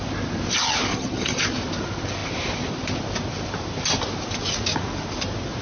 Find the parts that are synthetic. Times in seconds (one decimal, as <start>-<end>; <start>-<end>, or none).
0.9-1.4